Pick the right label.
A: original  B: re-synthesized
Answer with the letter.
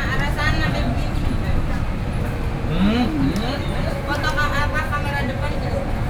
A